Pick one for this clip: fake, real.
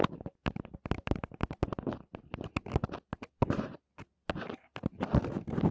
real